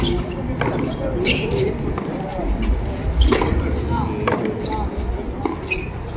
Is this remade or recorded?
recorded